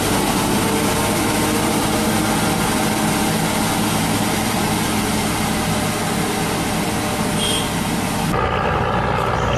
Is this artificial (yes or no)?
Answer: no